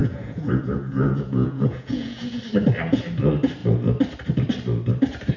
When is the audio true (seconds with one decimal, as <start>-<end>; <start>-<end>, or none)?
2.4-5.4